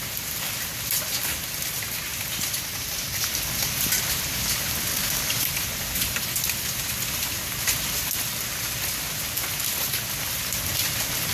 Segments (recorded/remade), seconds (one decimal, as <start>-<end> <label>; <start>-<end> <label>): 0.0-4.9 recorded; 4.9-5.5 remade; 5.5-11.3 recorded